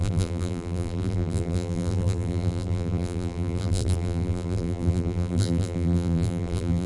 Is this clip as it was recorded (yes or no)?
no